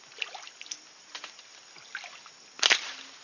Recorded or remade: recorded